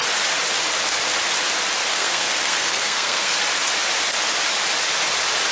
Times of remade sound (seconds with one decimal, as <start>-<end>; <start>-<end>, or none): 1.9-3.4